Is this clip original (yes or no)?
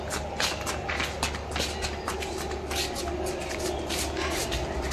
yes